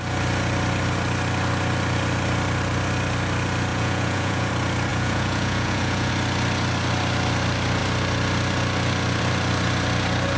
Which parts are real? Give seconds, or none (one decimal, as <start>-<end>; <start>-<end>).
0.0-3.7; 4.5-4.9; 6.1-10.4